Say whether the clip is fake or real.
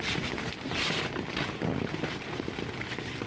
real